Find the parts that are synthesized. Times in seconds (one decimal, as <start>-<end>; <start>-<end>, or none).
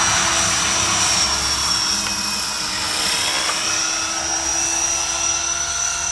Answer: none